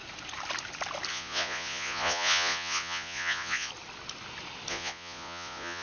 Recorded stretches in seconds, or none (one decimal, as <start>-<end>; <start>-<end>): 0.0-1.1; 3.7-4.7